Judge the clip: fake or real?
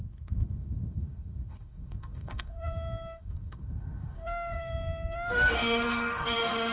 fake